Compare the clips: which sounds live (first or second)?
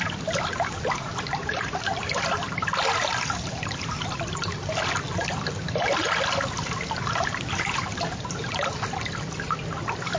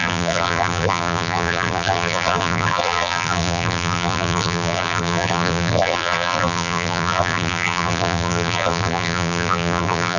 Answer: first